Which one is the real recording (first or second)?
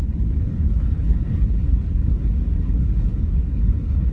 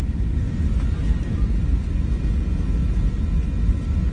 second